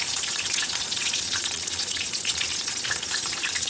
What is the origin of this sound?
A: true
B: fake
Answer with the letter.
B